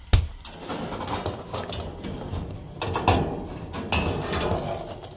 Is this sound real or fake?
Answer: real